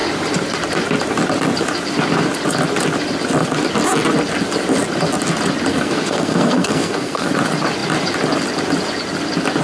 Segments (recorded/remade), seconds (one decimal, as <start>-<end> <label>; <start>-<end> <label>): 0.0-5.7 recorded; 5.7-7.3 remade; 7.3-9.6 recorded